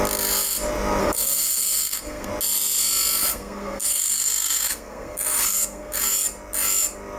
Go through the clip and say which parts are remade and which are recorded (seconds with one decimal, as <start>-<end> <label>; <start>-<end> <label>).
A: 0.0-1.0 recorded; 1.0-2.3 remade; 2.3-3.3 recorded; 3.3-6.0 remade; 6.0-7.2 recorded